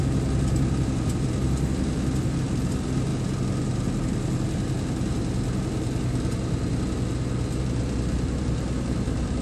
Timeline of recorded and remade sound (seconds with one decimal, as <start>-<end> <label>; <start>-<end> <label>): 0.0-3.1 remade; 3.1-7.6 recorded; 7.6-9.4 remade